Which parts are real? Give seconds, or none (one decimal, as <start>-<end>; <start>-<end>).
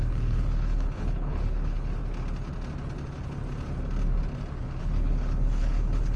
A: 2.0-4.8